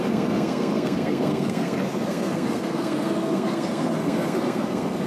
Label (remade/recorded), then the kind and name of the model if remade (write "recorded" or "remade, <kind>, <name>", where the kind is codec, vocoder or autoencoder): remade, codec, SNAC